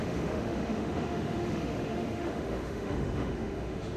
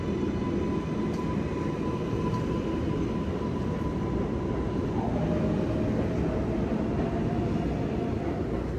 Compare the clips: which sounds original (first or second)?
second